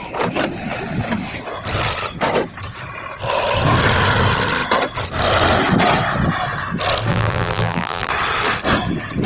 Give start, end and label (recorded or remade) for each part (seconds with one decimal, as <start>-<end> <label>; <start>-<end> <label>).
0.0-7.1 recorded; 7.1-8.1 remade; 8.1-9.3 recorded